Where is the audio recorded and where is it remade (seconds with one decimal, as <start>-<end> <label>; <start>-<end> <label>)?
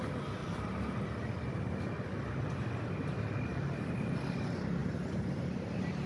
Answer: 0.0-0.4 recorded; 0.4-1.0 remade; 1.0-4.8 recorded; 4.8-6.1 remade